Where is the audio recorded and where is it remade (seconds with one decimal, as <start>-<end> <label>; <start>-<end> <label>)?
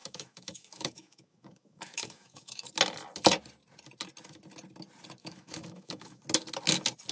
0.0-2.7 remade; 2.7-5.2 recorded; 5.2-6.2 remade; 6.2-7.1 recorded